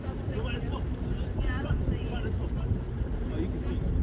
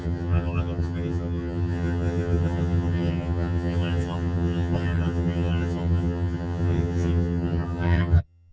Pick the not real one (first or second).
second